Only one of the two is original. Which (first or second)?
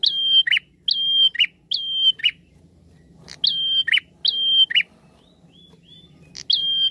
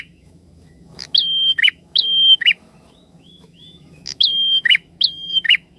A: first